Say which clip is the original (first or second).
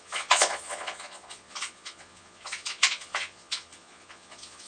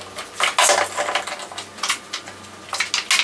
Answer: second